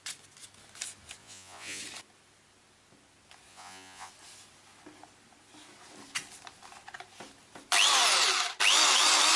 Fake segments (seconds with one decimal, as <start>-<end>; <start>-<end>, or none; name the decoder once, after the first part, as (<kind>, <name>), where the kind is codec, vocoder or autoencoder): 1.2-1.8 (vocoder, Vocos); 3.5-4.1